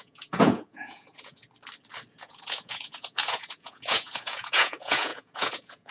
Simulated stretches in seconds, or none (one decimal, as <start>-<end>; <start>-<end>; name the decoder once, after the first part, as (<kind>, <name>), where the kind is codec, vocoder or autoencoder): 0.0-1.4 (vocoder, Vocos); 2.1-5.9